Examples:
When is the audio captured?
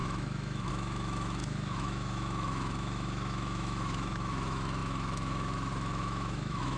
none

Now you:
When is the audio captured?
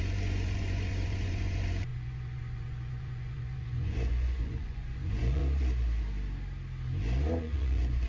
5.4-7.4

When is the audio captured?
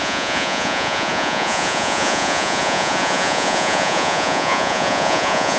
none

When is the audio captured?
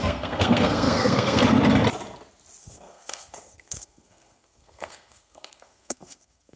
1.4-2.6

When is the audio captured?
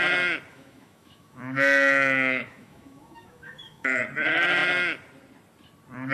0.0-0.5; 4.0-6.1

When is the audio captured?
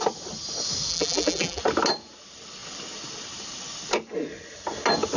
0.0-0.9; 1.6-5.2